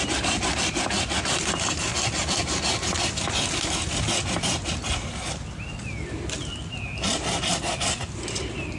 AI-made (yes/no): no